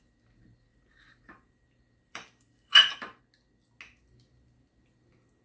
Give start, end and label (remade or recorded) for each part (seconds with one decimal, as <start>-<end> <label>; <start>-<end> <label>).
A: 0.0-0.7 recorded; 0.7-3.2 remade; 3.2-5.4 recorded